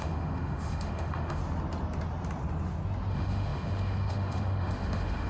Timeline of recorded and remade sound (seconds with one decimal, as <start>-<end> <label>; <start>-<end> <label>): 0.0-1.4 remade; 1.4-3.1 recorded; 3.1-5.3 remade